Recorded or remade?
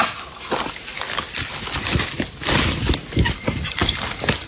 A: recorded